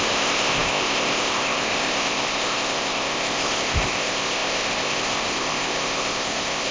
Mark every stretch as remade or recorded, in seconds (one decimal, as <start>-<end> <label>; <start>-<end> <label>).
0.0-6.7 remade